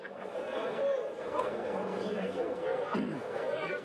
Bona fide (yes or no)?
no